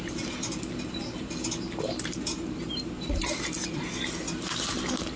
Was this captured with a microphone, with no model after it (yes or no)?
yes